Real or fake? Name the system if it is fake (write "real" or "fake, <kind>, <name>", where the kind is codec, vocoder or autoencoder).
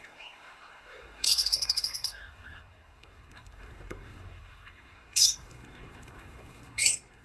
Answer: fake, codec, SNAC